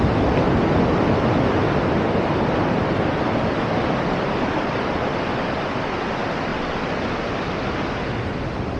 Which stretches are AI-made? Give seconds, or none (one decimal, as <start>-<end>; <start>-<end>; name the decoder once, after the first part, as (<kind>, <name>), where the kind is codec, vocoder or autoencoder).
none